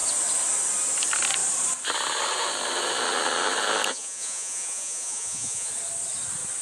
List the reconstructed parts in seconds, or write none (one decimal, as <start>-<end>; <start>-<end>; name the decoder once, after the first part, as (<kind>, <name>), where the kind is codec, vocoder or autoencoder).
3.9-5.7 (vocoder, Vocos)